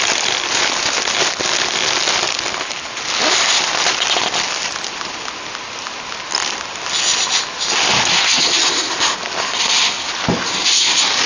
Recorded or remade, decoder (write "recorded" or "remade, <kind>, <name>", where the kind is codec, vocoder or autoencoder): recorded